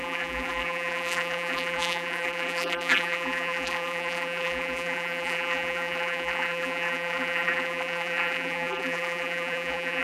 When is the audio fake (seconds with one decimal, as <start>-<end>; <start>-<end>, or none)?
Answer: 0.0-10.0